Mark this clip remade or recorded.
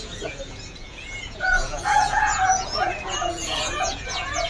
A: remade